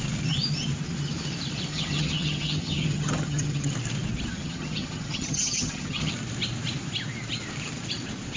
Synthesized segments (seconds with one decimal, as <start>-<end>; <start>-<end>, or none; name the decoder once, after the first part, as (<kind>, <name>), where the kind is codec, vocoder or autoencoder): 1.7-3.7 (vocoder, HiFi-GAN); 4.3-6.1